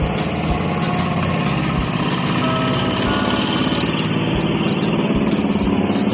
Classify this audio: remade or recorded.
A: recorded